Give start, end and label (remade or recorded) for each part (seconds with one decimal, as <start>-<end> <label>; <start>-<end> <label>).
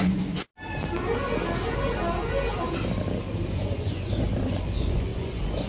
0.0-0.5 remade; 0.5-3.5 recorded; 3.5-5.7 remade